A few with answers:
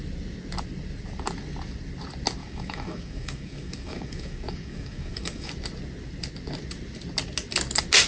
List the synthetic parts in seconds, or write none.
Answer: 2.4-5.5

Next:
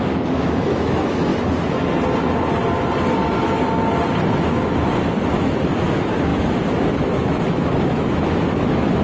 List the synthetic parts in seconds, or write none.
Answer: 0.0-1.3; 5.3-9.0